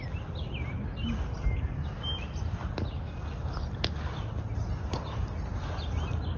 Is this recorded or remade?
recorded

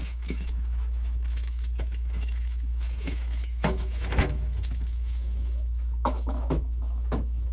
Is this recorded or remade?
remade